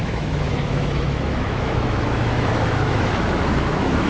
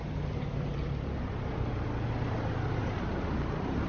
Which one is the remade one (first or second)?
first